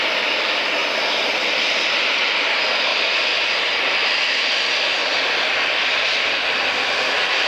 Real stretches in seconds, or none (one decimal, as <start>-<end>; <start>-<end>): 0.0-0.8; 2.2-2.9; 4.4-5.0; 6.6-7.5